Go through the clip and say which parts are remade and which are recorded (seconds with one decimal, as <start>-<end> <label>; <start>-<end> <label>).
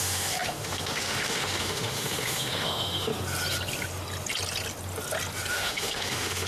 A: 0.0-3.1 remade; 3.1-5.5 recorded; 5.5-6.5 remade